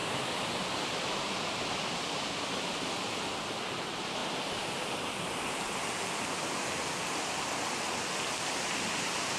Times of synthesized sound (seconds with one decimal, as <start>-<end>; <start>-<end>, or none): 3.7-4.2; 8.5-9.4